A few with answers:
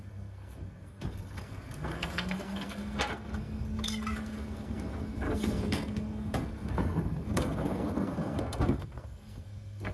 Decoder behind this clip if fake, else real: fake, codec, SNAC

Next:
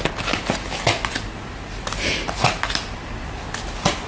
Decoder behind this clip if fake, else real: real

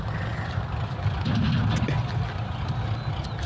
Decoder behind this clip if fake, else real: real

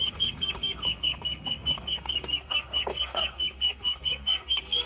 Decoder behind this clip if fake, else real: fake, codec, SNAC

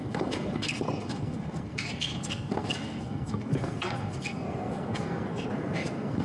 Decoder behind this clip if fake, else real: fake, codec, SNAC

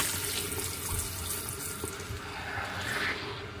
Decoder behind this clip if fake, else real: real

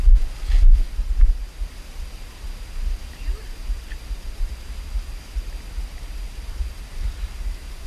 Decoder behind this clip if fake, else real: real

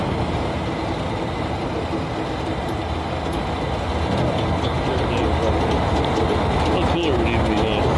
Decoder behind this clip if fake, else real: real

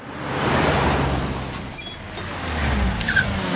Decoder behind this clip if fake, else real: real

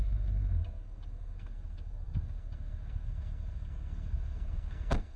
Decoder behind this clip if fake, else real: fake, codec, SNAC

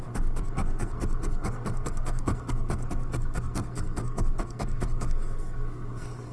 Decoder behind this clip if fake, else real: fake, codec, SNAC